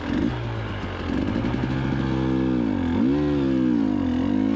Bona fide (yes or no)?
yes